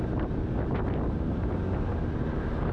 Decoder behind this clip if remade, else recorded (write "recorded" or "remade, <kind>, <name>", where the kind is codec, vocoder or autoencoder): recorded